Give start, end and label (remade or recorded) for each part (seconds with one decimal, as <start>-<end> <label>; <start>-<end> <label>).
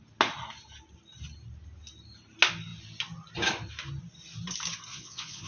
0.0-4.9 recorded; 4.9-5.5 remade